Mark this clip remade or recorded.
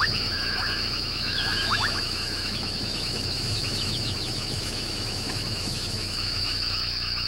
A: remade